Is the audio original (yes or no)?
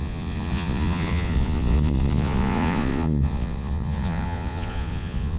no